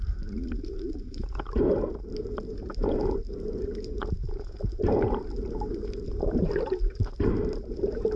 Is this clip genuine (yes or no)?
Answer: no